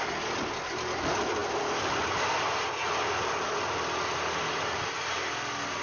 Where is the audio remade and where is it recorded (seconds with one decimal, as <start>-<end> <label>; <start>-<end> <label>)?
0.0-5.8 recorded